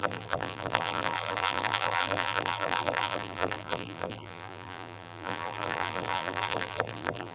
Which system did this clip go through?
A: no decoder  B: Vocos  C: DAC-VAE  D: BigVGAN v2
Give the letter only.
D